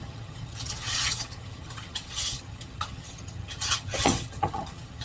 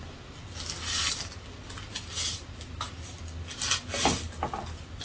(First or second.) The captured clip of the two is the second